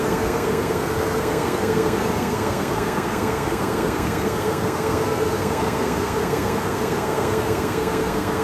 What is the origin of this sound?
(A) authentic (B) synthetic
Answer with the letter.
B